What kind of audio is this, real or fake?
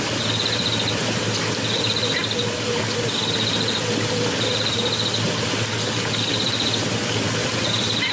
real